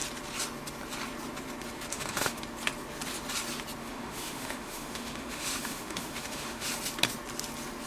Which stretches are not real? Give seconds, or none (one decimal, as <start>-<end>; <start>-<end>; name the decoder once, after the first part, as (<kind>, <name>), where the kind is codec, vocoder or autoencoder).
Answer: 1.9-2.4 (autoencoder, DAC-VAE); 3.8-6.7